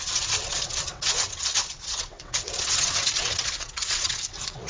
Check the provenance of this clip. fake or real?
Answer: fake